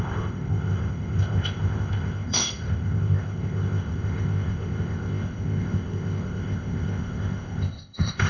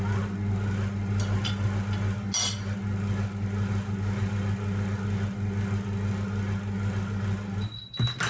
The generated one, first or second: first